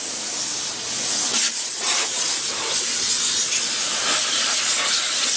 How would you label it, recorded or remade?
recorded